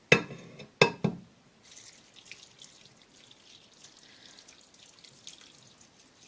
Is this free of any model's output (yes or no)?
yes